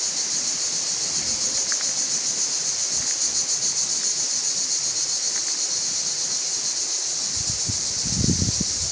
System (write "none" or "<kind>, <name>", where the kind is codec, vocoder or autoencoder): none